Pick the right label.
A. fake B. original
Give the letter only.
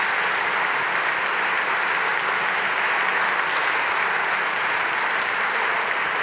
B